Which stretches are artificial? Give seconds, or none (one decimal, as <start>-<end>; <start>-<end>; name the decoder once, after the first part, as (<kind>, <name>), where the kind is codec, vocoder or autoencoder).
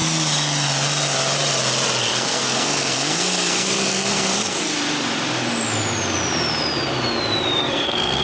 2.1-4.7 (codec, SNAC); 7.6-8.2